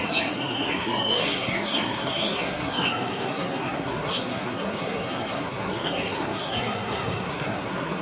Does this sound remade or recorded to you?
remade